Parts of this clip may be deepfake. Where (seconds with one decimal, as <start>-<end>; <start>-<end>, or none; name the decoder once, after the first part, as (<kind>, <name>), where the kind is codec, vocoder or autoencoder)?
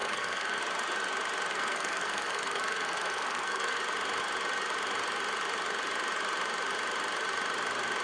0.0-0.6 (codec, SNAC); 1.5-3.8